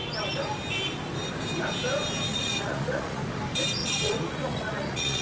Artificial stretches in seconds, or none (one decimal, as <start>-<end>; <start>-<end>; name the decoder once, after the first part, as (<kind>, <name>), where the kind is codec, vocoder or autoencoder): 2.3-3.2 (vocoder, Vocos); 3.8-5.2